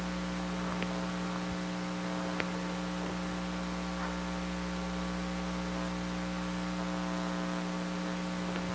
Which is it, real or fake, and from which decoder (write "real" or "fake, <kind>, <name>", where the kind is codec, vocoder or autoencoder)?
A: real